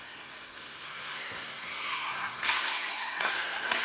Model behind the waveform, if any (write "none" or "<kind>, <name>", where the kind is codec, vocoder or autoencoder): codec, SNAC